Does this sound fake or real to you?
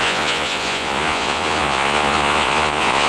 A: fake